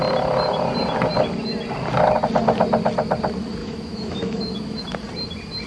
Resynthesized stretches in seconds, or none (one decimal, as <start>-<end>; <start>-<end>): 3.6-4.8